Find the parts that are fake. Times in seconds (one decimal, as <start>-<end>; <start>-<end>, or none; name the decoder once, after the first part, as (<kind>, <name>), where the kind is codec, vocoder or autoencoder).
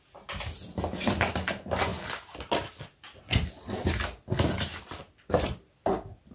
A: none